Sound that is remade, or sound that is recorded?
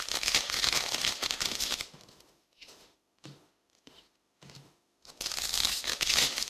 remade